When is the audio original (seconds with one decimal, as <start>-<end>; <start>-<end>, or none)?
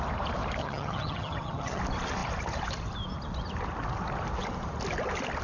0.0-0.6; 1.8-5.4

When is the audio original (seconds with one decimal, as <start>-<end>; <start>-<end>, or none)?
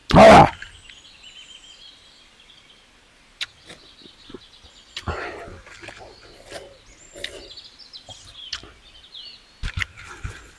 0.0-10.6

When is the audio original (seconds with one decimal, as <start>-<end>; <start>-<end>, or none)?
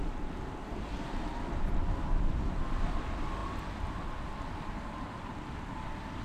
0.0-6.2